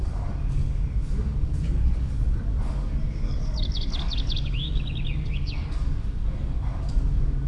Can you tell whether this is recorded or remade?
remade